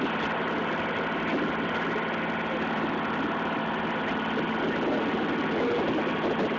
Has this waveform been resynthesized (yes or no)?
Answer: no